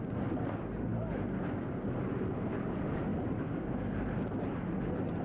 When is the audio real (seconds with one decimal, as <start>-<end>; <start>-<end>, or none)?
0.0-3.1; 3.7-5.2